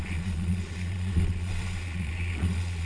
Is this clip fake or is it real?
fake